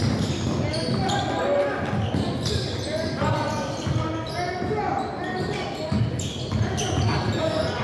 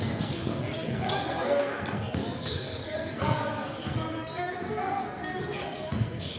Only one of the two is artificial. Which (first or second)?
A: second